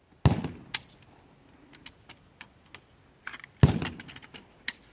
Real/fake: real